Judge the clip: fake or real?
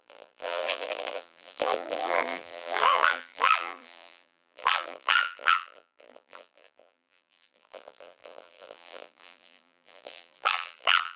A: fake